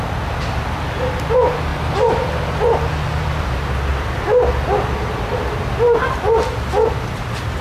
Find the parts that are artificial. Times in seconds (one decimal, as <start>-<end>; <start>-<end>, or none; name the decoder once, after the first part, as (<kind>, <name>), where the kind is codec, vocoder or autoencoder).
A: 3.9-4.4 (vocoder, BigVGAN v2)